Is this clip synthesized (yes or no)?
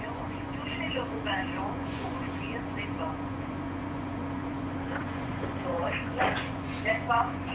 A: yes